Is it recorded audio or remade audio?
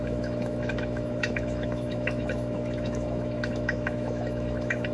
remade